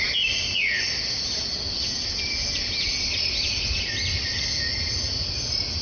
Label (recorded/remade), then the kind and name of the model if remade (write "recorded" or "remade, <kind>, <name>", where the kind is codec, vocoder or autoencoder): recorded